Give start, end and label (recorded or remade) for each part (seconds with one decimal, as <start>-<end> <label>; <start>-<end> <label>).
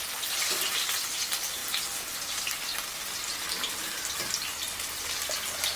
0.0-5.8 recorded